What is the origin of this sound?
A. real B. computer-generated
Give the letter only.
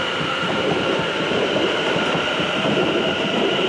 B